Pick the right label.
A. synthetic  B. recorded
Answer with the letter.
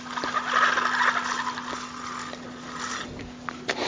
B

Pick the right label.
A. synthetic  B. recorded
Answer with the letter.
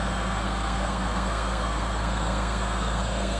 A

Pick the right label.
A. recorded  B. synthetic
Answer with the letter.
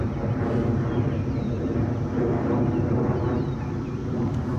A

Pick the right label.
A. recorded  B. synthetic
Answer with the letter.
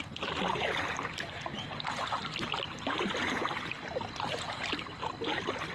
A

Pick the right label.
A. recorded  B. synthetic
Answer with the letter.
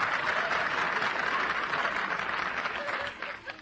A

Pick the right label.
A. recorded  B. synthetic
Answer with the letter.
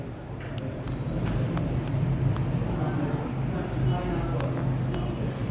A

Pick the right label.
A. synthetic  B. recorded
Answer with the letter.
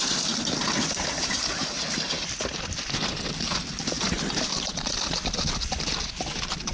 B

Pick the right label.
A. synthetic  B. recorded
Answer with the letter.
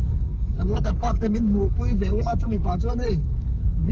A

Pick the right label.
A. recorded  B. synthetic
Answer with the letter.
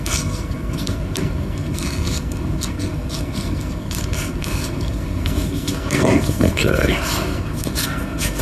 B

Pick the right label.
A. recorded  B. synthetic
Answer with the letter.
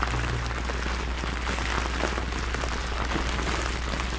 A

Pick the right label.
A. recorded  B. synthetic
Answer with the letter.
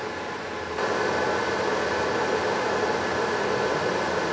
A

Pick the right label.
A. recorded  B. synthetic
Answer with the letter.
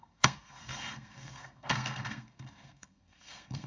B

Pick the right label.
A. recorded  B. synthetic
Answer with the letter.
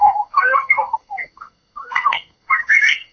B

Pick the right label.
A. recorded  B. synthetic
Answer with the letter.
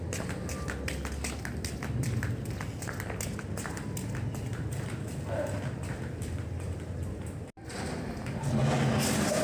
A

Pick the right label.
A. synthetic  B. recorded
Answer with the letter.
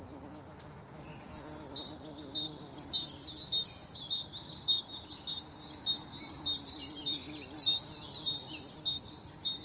B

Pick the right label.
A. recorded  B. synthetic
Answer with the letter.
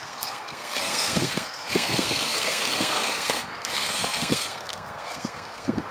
B